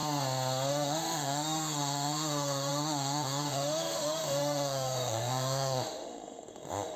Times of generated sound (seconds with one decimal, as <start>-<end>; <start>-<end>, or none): 0.7-7.0